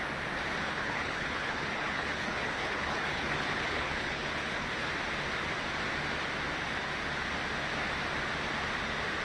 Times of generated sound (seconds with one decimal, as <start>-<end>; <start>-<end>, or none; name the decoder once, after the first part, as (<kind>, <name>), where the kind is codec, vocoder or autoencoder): 0.6-4.9 (codec, HILCodec)